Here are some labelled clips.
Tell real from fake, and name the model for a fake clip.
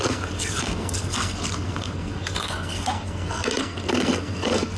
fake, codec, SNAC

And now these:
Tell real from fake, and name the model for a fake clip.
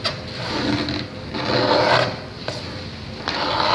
real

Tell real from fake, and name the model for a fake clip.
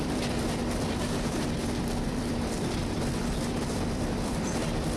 fake, vocoder, BigVGAN v2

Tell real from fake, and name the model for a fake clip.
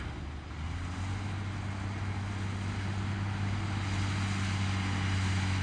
real